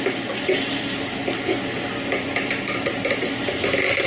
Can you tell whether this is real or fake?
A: real